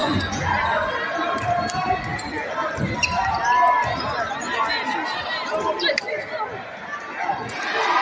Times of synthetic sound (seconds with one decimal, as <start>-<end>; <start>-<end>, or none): 0.0-0.9